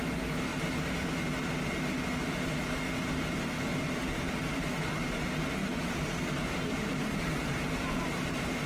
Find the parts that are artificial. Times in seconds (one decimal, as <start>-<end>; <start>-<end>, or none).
3.7-5.0; 5.6-8.7